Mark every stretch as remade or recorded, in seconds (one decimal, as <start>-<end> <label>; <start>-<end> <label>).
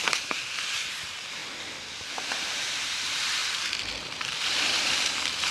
0.0-1.4 remade; 1.4-2.2 recorded; 2.2-3.4 remade; 3.4-4.0 recorded; 4.0-5.5 remade